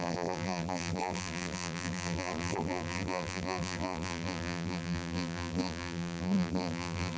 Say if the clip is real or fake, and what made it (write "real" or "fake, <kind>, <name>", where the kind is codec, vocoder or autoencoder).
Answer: fake, vocoder, BigVGAN v2